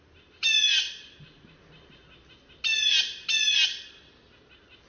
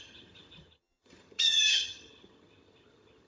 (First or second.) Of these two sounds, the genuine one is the first